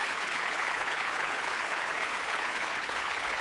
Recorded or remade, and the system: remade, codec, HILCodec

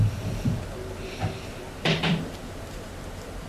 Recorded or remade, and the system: remade, vocoder, BigVGAN v2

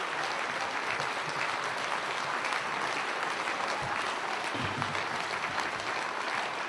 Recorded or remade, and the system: recorded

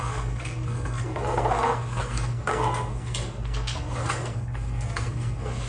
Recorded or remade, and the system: remade, codec, SNAC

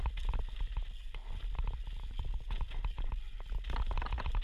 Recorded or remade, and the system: recorded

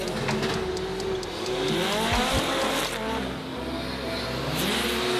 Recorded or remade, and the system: recorded